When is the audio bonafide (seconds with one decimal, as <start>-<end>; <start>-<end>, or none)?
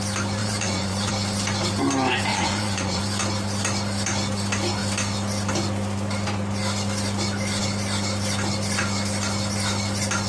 0.0-0.4; 1.1-2.3; 3.0-10.3